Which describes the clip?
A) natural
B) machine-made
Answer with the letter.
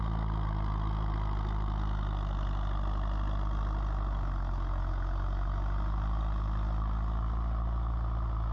A